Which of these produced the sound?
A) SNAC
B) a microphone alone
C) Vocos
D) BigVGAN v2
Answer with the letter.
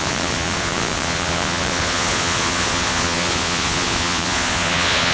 C